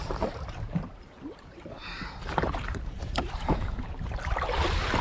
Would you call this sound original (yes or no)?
no